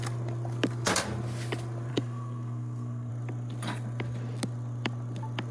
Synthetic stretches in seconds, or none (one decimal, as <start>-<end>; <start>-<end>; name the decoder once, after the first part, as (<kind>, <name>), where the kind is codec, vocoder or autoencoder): 1.9-3.1 (codec, SNAC)